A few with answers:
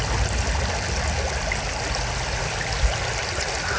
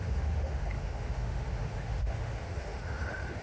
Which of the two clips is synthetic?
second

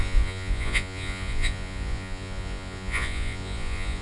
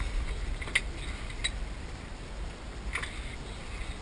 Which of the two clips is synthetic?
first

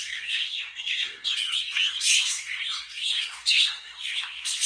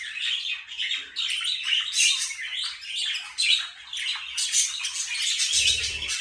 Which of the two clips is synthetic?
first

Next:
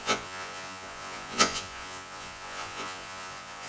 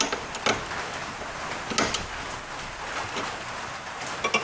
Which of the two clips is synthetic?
first